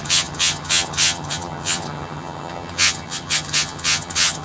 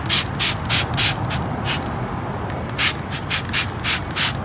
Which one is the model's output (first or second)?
first